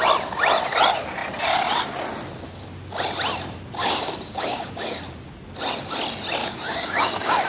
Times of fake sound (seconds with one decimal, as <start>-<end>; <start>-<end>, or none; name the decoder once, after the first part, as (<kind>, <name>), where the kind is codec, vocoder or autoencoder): 3.8-5.0 (codec, DAC); 6.4-7.5